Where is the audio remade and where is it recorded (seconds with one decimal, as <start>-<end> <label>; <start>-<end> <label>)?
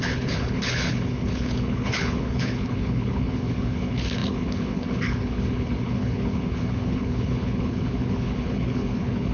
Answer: 0.0-9.3 remade